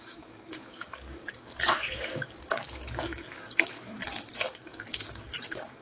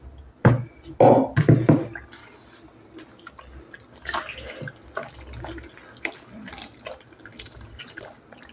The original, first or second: second